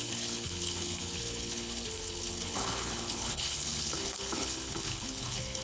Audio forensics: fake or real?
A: fake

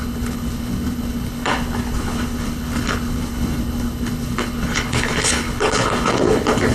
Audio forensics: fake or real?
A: fake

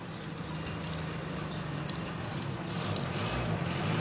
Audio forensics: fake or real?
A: real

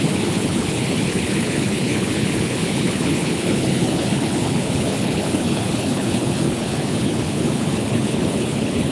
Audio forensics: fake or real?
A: fake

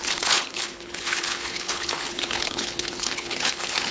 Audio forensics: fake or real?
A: fake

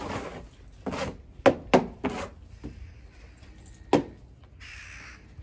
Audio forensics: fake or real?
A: real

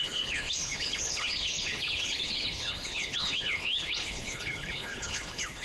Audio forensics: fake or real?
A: fake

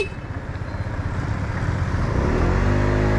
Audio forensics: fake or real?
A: real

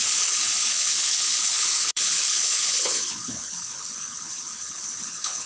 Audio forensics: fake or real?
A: fake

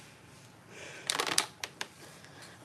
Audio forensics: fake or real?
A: real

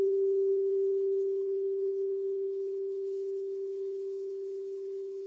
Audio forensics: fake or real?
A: fake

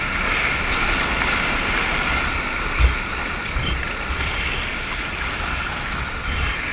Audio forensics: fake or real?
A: real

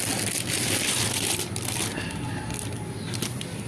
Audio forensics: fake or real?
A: real